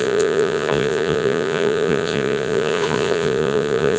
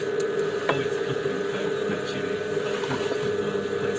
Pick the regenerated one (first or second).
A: first